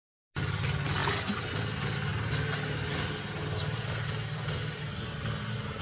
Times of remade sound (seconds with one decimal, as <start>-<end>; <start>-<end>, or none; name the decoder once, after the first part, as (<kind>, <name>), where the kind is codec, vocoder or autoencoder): none